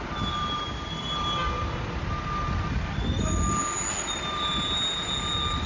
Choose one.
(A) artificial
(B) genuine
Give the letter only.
B